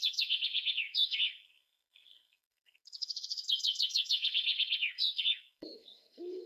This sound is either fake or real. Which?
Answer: fake